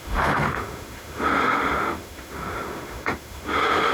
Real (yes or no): no